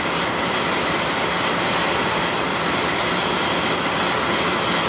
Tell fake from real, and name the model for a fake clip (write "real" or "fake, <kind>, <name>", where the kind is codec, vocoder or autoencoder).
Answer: real